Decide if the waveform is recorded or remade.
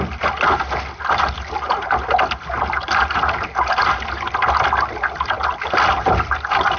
recorded